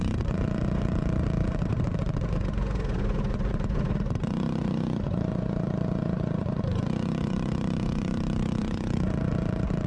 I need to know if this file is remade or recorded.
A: remade